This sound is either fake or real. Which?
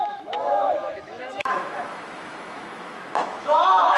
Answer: fake